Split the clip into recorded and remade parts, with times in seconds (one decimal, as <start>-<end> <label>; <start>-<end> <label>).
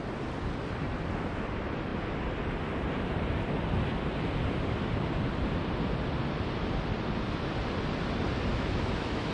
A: 0.0-8.5 recorded; 8.5-9.3 remade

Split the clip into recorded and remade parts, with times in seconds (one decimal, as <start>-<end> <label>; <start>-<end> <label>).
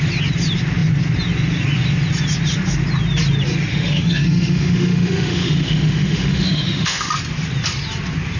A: 0.0-3.7 recorded; 3.7-7.1 remade; 7.1-8.4 recorded